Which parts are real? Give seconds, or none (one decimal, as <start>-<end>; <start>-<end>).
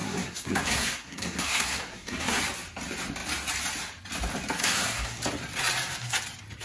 2.4-4.6; 5.2-6.6